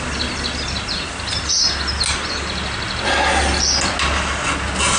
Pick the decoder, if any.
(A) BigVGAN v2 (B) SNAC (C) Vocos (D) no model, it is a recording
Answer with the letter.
D